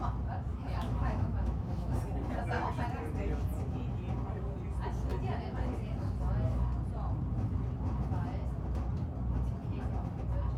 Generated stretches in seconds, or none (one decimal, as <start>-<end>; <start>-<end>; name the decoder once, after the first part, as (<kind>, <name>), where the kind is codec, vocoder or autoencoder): 0.5-2.0 (autoencoder, DAC-VAE)